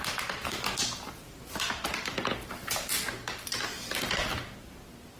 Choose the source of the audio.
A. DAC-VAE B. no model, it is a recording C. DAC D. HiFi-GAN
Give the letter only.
B